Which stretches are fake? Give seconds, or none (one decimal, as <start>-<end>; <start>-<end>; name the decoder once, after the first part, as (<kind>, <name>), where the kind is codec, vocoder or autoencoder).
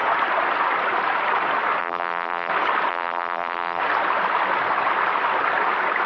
1.8-2.5 (vocoder, BigVGAN v2); 2.9-3.8